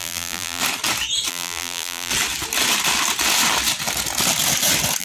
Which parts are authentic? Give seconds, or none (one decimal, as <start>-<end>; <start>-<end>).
0.6-1.3; 2.1-5.0